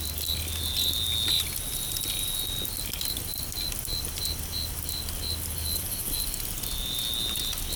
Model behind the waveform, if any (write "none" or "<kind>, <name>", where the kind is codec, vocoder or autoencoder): none